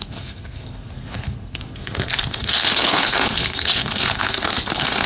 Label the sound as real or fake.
fake